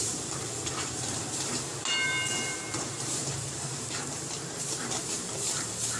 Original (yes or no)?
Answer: no